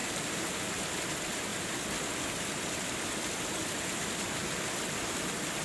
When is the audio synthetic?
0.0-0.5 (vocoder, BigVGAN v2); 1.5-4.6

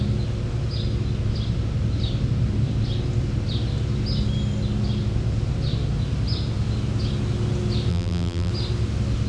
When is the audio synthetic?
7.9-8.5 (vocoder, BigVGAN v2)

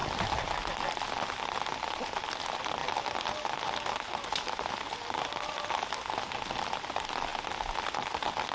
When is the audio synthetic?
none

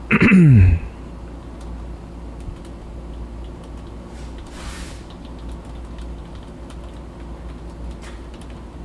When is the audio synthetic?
none